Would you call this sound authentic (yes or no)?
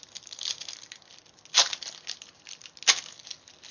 yes